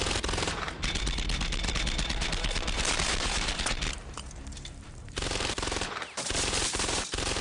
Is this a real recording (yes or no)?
no